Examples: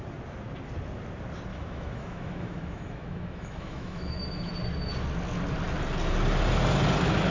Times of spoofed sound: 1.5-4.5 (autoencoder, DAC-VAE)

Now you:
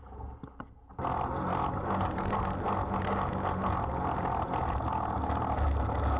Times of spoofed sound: none

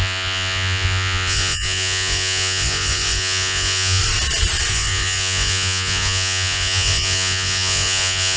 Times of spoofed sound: 0.0-4.0 (vocoder, Vocos); 4.7-8.4

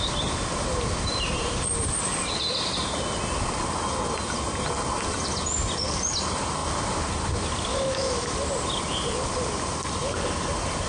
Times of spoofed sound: 7.7-8.3 (autoencoder, DAC-VAE)

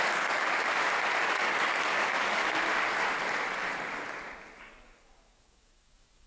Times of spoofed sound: 0.0-0.6 (codec, DAC); 1.1-2.4; 4.6-6.3

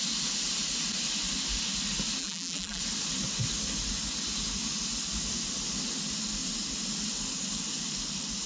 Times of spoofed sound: 2.2-2.8 (vocoder, BigVGAN v2)

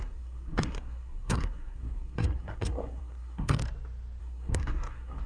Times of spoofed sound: 0.0-3.6 (codec, SNAC); 4.2-5.3